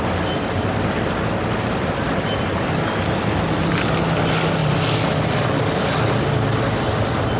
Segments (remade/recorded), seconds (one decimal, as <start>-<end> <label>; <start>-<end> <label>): 0.0-7.4 recorded

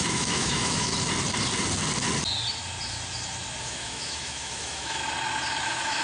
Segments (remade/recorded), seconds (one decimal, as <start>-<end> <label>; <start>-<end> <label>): 0.0-0.9 remade; 0.9-3.6 recorded; 3.6-5.0 remade; 5.0-5.6 recorded; 5.6-6.0 remade

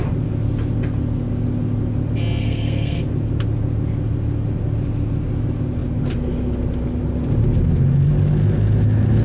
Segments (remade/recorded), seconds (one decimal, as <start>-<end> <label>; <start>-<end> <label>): 0.0-2.4 recorded; 2.4-3.0 remade; 3.0-9.2 recorded

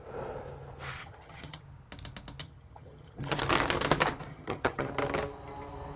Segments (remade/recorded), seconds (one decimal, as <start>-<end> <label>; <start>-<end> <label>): 0.0-1.0 recorded; 1.0-1.6 remade; 1.6-2.4 recorded; 2.4-3.4 remade; 3.4-4.3 recorded; 4.3-4.9 remade; 4.9-6.0 recorded